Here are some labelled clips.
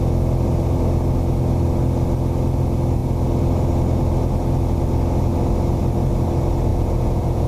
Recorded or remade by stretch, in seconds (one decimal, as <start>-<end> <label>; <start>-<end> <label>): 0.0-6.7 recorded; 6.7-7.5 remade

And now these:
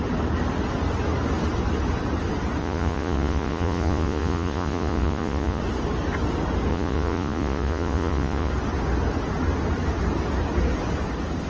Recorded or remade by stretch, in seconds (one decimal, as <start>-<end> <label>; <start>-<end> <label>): 0.0-2.6 recorded; 2.6-5.6 remade; 5.6-6.7 recorded; 6.7-8.5 remade; 8.5-11.5 recorded

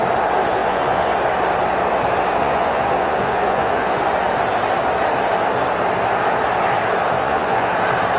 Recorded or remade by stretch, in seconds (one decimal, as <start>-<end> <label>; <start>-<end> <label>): 0.0-0.6 recorded; 0.6-1.1 remade; 1.1-2.4 recorded; 2.4-4.0 remade; 4.0-7.2 recorded; 7.2-7.7 remade; 7.7-8.2 recorded

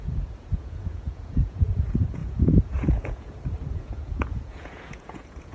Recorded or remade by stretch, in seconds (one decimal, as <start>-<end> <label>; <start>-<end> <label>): 0.0-5.5 remade

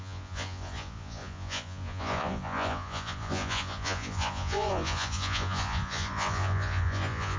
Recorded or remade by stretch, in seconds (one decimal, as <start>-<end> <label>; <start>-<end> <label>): 0.0-7.4 remade

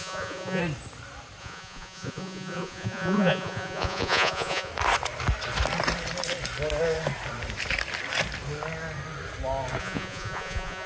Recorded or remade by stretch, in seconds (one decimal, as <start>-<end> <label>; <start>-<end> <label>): 0.0-0.6 remade; 0.6-1.4 recorded; 1.4-4.7 remade; 4.7-9.8 recorded; 9.8-10.9 remade